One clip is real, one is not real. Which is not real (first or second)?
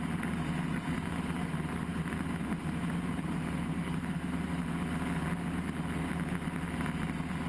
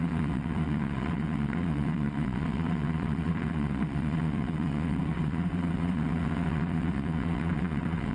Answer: second